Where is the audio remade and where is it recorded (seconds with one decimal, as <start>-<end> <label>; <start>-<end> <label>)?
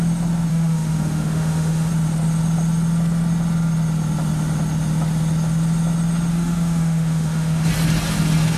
0.0-0.5 recorded; 0.5-1.9 remade; 1.9-6.3 recorded; 6.3-7.7 remade; 7.7-8.6 recorded